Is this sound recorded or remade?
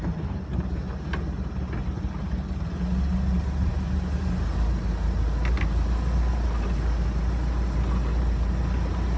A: recorded